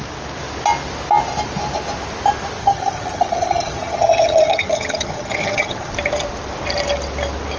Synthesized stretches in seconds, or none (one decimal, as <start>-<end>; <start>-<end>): 2.6-5.9